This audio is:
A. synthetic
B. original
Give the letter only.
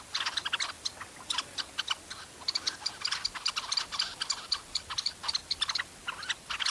B